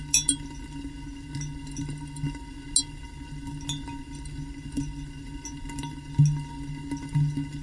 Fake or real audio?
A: real